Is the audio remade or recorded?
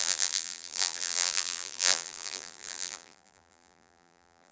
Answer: remade